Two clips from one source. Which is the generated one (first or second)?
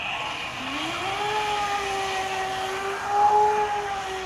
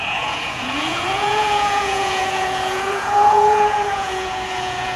second